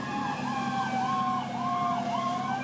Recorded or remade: remade